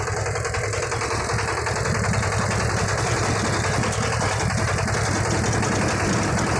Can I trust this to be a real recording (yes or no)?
no